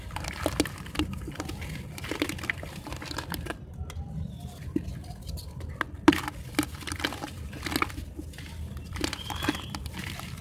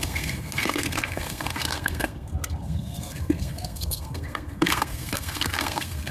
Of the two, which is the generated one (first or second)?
second